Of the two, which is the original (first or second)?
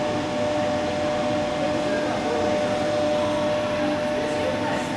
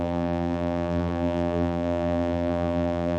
first